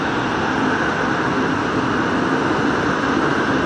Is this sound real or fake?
real